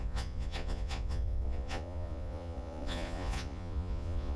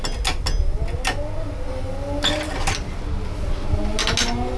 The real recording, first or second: second